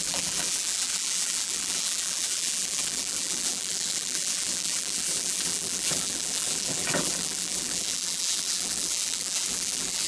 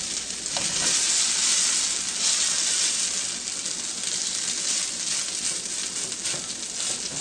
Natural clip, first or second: second